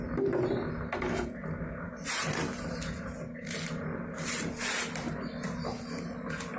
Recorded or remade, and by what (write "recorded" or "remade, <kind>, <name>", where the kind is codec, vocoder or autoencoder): recorded